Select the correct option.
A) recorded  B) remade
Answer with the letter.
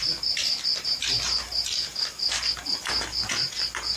A